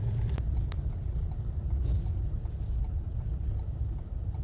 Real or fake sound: real